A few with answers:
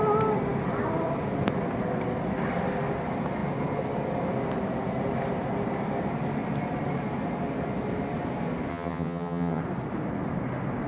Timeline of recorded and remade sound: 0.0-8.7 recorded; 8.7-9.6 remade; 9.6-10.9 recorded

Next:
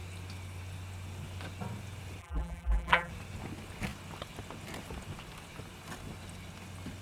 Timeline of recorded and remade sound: 0.0-2.2 recorded; 2.2-3.1 remade; 3.1-7.0 recorded

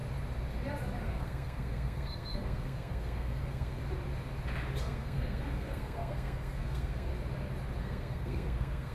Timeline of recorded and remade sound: 0.0-1.0 recorded; 1.0-3.8 remade; 3.8-4.8 recorded; 4.8-7.1 remade; 7.1-7.8 recorded; 7.8-8.9 remade

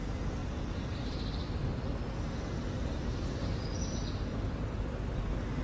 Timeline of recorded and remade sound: 0.0-0.4 recorded; 0.4-3.8 remade; 3.8-5.6 recorded

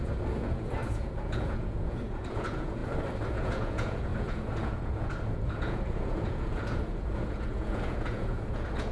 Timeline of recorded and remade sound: 0.0-2.8 remade; 2.8-3.3 recorded; 3.3-8.9 remade

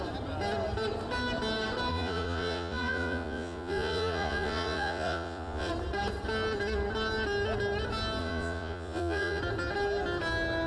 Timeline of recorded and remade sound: 0.0-1.9 recorded; 1.9-5.7 remade; 5.7-8.2 recorded; 8.2-9.4 remade; 9.4-10.7 recorded

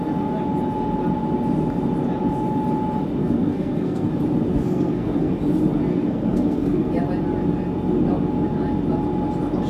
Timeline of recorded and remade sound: 0.0-3.2 recorded; 3.2-4.1 remade; 4.1-4.5 recorded; 4.5-5.3 remade; 5.3-5.9 recorded; 5.9-6.9 remade; 6.9-9.7 recorded

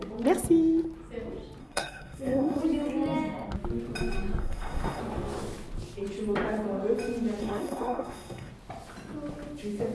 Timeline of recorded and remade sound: 0.0-1.6 recorded; 1.6-2.6 remade; 2.6-4.4 recorded; 4.4-5.0 remade; 5.0-7.4 recorded; 7.4-8.5 remade; 8.5-9.9 recorded